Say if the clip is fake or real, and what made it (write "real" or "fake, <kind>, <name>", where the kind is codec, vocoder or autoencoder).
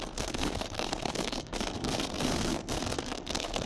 fake, codec, SNAC